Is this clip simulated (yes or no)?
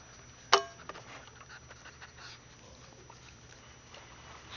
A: no